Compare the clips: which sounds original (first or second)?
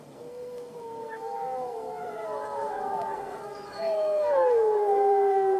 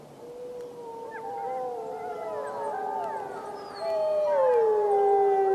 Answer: second